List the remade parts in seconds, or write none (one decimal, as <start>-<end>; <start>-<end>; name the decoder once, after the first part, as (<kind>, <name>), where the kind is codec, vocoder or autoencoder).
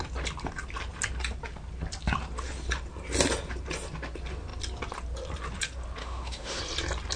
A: 6.0-6.6 (autoencoder, DAC-VAE)